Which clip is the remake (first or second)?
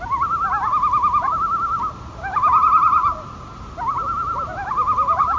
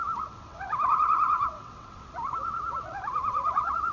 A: second